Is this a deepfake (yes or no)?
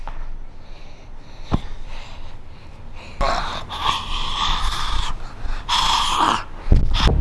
no